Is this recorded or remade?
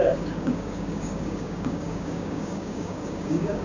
remade